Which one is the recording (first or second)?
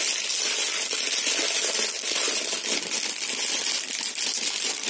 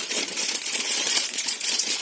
first